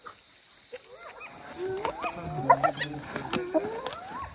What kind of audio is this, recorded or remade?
recorded